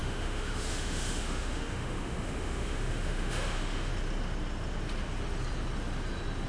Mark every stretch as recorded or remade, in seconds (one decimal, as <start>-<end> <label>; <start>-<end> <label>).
0.0-3.9 remade; 3.9-6.5 recorded